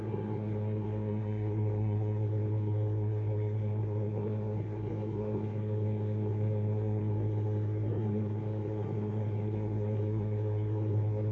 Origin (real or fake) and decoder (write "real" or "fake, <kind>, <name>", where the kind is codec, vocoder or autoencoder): fake, codec, SNAC